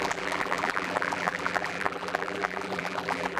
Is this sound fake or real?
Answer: fake